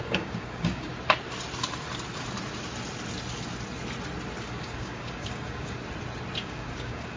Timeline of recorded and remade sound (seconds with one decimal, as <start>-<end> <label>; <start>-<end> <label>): 0.0-0.9 remade; 0.9-4.4 recorded; 4.4-5.8 remade; 5.8-6.4 recorded; 6.4-7.2 remade